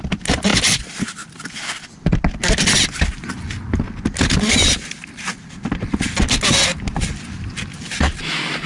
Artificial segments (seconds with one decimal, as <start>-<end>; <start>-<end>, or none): none